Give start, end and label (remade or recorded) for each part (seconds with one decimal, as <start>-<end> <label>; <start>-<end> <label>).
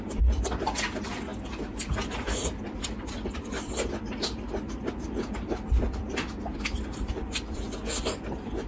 0.0-8.7 recorded